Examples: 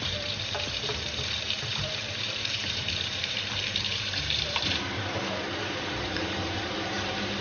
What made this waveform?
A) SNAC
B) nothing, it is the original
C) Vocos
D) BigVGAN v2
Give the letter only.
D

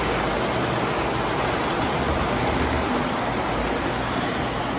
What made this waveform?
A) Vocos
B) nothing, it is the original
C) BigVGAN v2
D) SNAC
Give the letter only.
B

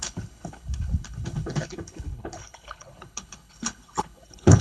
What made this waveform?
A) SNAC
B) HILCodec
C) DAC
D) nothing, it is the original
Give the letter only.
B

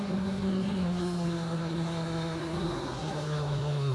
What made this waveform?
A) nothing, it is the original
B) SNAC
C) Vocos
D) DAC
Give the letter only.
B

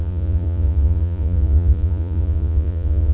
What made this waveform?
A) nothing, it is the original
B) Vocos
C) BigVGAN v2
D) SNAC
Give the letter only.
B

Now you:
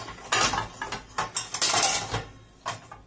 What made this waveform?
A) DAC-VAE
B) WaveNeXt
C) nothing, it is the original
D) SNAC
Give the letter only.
C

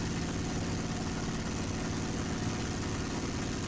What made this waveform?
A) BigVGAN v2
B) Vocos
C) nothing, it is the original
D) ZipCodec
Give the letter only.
C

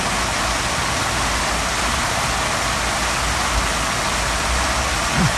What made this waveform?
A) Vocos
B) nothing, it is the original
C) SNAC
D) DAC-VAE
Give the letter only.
B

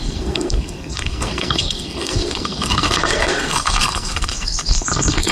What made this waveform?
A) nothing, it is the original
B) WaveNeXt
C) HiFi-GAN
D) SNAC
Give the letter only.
D